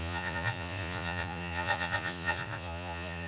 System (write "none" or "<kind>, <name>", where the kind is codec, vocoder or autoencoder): vocoder, Vocos